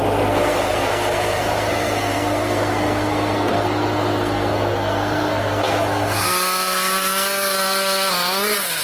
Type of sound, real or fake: fake